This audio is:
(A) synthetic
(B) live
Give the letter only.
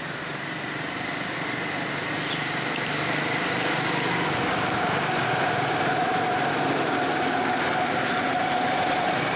B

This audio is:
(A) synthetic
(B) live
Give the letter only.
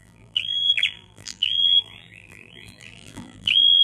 A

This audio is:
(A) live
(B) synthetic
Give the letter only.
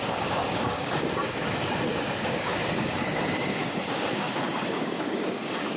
B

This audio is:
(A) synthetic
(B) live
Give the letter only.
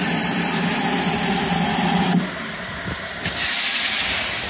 B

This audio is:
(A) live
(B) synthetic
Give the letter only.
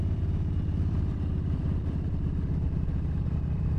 B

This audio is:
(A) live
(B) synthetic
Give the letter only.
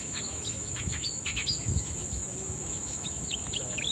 B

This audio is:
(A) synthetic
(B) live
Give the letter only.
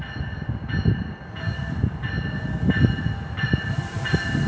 B